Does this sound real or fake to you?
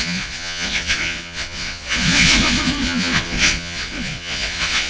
fake